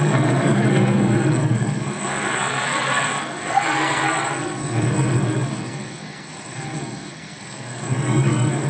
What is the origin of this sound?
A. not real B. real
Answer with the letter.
A